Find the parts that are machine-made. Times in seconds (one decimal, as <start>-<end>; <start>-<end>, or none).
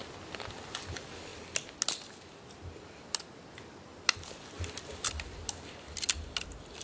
none